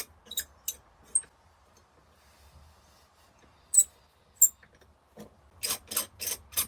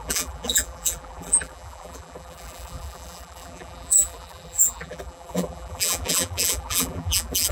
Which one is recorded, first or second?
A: first